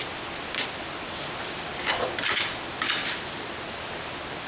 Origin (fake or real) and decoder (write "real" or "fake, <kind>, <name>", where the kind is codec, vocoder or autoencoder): real